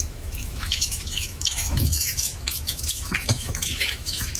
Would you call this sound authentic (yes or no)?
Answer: no